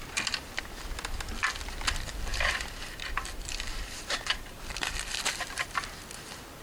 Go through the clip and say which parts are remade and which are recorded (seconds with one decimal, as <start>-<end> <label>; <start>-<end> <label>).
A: 0.0-2.3 recorded; 2.3-5.3 remade; 5.3-6.6 recorded